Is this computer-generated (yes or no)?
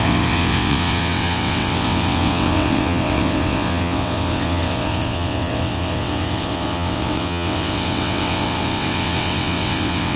yes